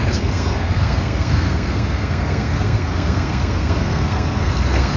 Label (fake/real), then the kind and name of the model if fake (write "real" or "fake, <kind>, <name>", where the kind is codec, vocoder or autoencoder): fake, codec, SNAC